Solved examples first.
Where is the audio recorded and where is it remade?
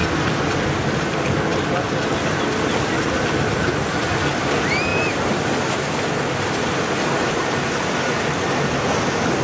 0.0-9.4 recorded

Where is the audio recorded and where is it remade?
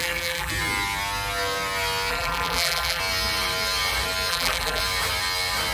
0.0-0.5 remade; 0.5-2.1 recorded; 2.1-3.0 remade; 3.0-4.3 recorded; 4.3-4.8 remade; 4.8-5.7 recorded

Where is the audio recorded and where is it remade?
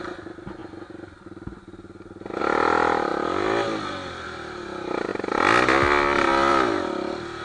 0.0-3.1 recorded; 3.1-4.6 remade; 4.6-7.4 recorded